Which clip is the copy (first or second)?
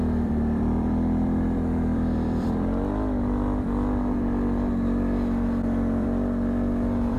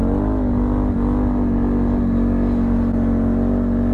first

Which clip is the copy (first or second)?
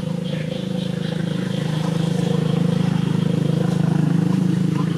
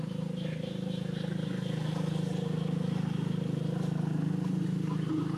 first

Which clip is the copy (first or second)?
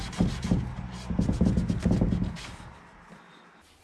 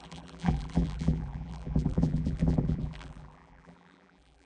second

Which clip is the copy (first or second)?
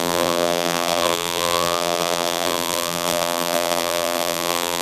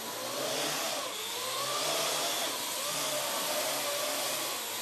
first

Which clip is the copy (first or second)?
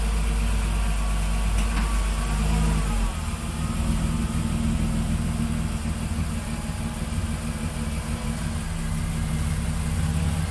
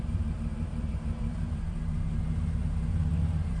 second